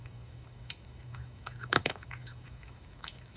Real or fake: fake